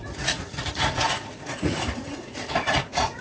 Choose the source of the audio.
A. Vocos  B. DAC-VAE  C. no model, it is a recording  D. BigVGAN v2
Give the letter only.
A